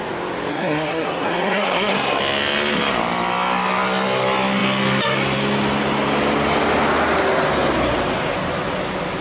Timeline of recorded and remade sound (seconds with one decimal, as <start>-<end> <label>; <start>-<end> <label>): 0.0-0.5 recorded; 0.5-2.2 remade; 2.2-9.2 recorded